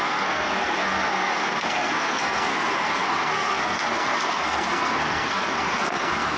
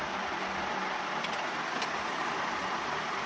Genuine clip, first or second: second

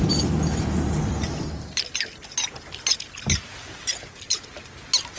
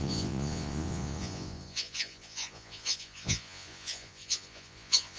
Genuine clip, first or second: first